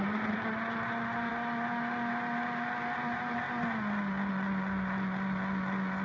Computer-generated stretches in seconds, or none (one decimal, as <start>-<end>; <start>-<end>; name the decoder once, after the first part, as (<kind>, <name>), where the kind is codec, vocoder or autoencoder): none